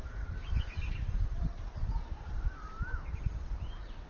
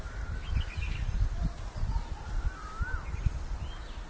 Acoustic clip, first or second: second